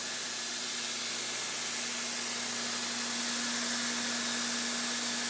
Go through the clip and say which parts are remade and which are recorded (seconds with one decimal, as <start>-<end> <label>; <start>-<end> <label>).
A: 0.0-0.7 remade; 0.7-5.3 recorded